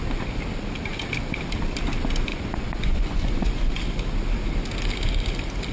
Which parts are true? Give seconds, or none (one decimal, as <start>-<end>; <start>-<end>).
0.0-2.3; 3.8-5.7